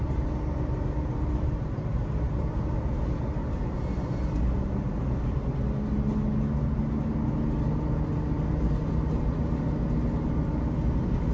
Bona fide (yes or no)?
yes